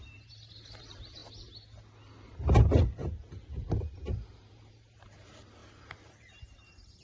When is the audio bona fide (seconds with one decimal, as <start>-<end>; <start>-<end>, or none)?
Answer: 1.2-3.8